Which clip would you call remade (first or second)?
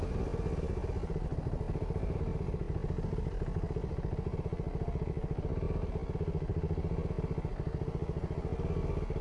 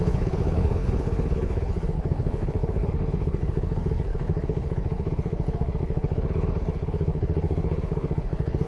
second